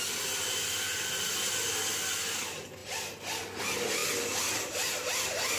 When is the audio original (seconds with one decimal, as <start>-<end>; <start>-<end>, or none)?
0.0-5.6